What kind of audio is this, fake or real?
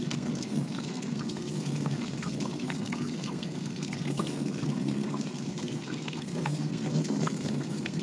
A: fake